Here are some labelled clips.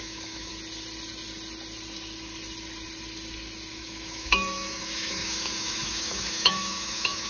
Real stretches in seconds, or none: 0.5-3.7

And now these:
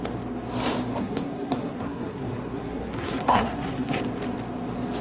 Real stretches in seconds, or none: 0.0-1.0; 4.0-5.0

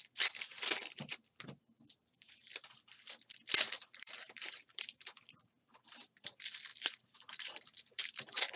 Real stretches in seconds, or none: 0.0-2.0; 2.5-3.7

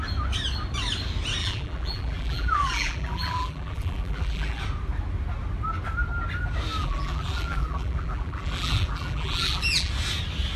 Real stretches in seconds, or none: 0.0-1.4; 4.6-6.8; 9.9-10.6

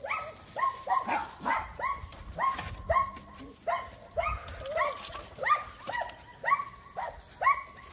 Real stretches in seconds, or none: 0.0-7.9

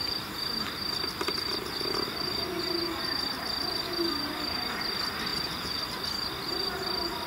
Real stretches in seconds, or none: 0.0-5.3; 5.8-7.3